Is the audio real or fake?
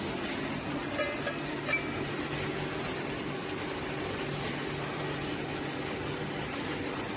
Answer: real